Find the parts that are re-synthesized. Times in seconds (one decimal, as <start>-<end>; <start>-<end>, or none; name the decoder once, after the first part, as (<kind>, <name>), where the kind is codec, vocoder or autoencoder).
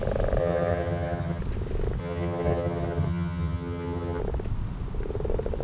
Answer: 0.4-1.4 (vocoder, HiFi-GAN); 2.0-4.2